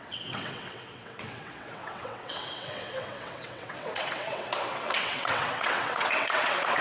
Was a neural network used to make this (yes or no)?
yes